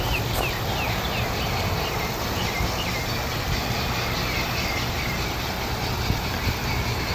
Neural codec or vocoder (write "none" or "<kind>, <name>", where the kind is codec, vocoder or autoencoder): none